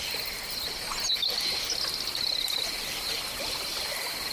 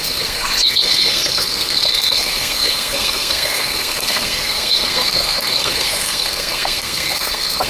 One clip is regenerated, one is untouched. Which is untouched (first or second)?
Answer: first